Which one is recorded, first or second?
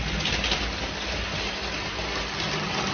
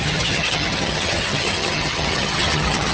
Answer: first